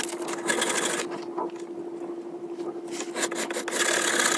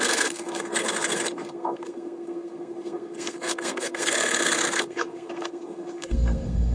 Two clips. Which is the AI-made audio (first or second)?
second